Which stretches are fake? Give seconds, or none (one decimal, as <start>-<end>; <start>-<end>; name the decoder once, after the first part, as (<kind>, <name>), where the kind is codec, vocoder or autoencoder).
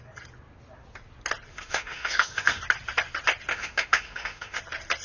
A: 1.5-2.6 (autoencoder, DAC-VAE); 3.5-4.6